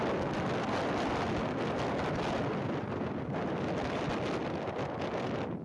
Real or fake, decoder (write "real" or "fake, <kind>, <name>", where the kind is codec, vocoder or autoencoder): real